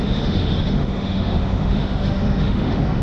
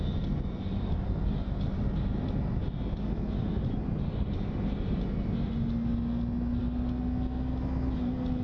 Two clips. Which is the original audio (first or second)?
second